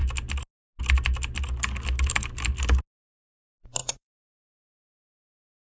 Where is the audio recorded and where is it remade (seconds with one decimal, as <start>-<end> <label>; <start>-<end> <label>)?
0.0-3.8 recorded; 3.8-5.3 remade; 5.3-5.8 recorded